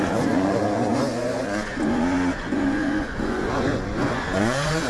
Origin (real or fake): fake